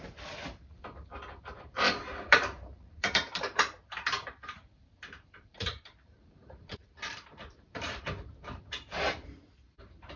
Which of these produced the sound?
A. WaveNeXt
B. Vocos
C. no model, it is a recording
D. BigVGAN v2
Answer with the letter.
D